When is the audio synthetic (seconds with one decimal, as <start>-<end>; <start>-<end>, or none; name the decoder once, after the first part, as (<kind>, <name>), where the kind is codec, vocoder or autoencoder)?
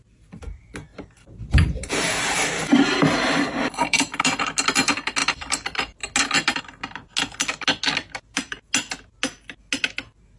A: 0.9-4.4 (vocoder, BigVGAN v2)